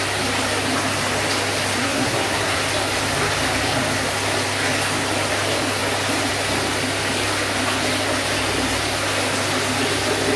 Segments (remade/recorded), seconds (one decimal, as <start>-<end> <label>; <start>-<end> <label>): 0.0-1.8 recorded; 1.8-2.6 remade; 2.6-10.4 recorded